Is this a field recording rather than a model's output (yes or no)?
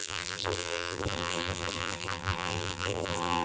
no